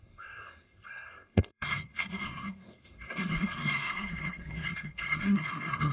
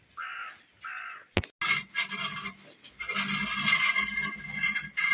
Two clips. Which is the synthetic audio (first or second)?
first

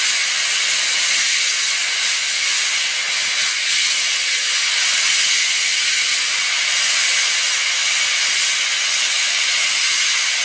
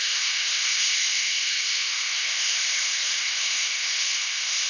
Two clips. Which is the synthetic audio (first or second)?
second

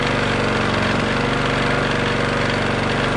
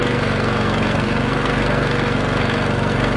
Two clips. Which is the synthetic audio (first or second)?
second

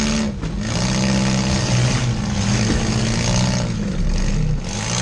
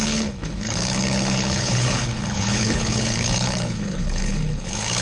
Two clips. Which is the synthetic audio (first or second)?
second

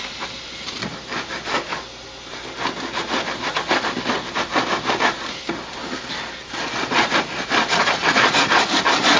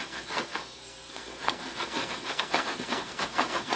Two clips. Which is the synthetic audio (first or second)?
second